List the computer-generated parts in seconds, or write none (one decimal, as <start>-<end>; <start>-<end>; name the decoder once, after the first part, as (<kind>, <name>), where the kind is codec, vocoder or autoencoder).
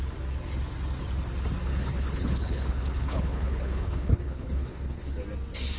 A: 1.7-5.2 (codec, HILCodec)